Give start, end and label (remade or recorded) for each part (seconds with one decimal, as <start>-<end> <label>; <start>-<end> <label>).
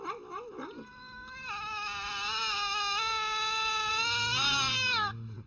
0.0-5.5 recorded